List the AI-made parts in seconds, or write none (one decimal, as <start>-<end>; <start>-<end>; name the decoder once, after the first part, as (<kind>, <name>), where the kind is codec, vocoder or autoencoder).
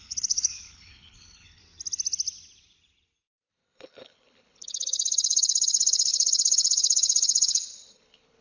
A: 0.0-1.6 (codec, HILCodec); 3.5-8.4